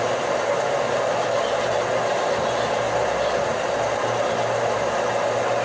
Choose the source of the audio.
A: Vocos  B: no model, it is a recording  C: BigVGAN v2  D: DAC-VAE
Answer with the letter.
B